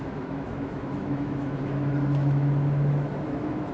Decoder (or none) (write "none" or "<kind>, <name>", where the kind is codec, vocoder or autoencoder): autoencoder, DAC-VAE